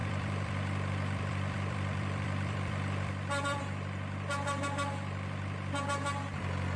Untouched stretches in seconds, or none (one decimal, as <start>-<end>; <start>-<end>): 3.6-6.8